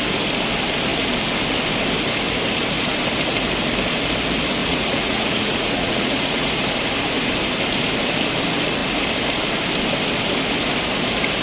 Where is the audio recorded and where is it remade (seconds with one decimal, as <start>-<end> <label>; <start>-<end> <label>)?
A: 0.0-4.6 recorded; 4.6-6.5 remade; 6.5-11.4 recorded